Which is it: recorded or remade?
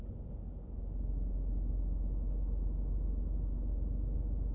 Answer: recorded